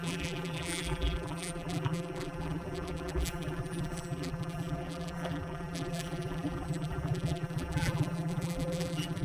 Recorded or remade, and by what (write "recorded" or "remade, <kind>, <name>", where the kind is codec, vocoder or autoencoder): remade, vocoder, BigVGAN v2